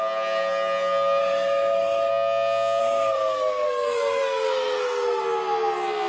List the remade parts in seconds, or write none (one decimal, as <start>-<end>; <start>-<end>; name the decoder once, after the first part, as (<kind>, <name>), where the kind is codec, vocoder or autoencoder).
1.2-2.1 (codec, SNAC); 2.8-5.2